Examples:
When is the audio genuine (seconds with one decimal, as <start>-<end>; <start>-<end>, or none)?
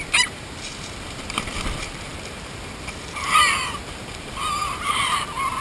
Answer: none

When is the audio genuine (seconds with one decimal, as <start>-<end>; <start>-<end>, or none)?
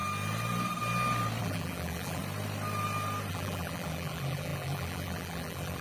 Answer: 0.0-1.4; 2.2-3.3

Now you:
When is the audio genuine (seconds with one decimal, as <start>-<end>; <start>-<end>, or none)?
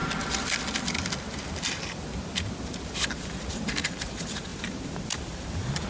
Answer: 0.0-3.5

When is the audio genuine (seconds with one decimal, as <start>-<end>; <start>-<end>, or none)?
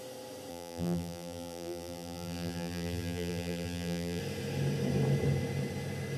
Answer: 0.0-0.5; 4.2-6.2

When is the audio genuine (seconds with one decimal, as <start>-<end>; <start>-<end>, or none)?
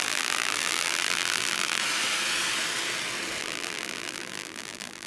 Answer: 1.8-3.4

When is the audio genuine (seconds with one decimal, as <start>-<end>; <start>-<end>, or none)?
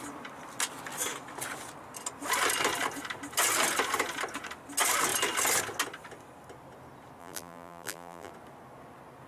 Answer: 0.0-7.2; 8.3-9.3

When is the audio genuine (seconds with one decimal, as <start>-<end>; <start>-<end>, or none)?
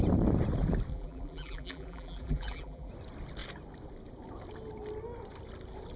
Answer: 0.0-0.9; 2.9-6.0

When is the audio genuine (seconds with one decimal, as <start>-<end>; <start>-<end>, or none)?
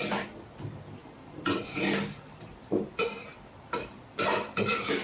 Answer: 0.0-1.0; 4.0-5.0